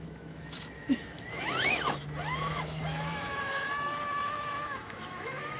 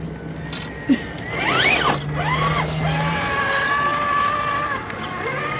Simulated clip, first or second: first